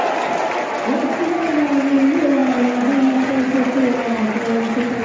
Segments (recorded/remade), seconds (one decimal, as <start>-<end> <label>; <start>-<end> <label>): 0.0-5.0 recorded